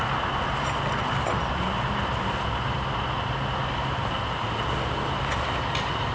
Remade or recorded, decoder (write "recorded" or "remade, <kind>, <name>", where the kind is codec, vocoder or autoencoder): recorded